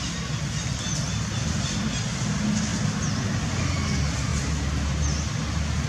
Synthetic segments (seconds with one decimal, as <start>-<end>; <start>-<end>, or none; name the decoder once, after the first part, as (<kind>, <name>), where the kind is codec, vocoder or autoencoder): 2.7-3.6 (vocoder, BigVGAN v2)